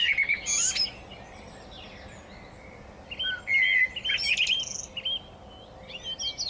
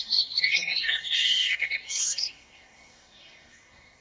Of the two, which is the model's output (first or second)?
second